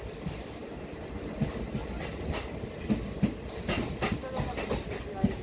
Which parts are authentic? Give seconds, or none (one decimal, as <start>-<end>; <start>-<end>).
0.0-5.4